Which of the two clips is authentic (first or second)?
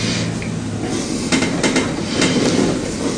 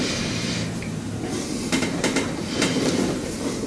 first